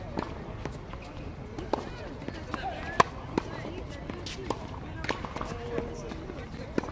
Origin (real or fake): real